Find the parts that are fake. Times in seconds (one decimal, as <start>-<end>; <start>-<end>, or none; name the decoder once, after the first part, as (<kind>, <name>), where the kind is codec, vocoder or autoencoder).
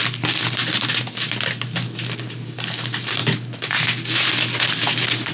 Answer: none